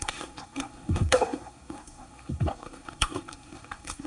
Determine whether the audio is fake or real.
fake